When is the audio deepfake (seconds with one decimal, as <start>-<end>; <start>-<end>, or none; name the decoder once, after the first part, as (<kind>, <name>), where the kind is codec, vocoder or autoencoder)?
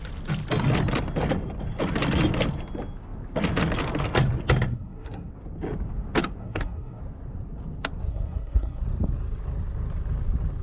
4.7-5.3 (codec, SNAC); 6.4-7.0; 8.1-8.8